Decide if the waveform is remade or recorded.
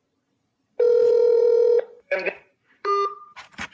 remade